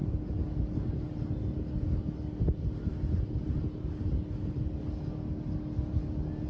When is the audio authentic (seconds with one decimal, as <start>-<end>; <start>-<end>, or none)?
0.0-6.5